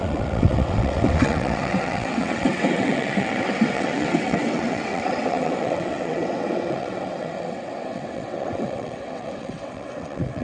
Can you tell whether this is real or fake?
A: fake